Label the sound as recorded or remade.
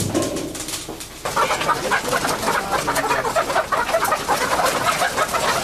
recorded